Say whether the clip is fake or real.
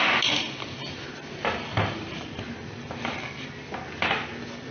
real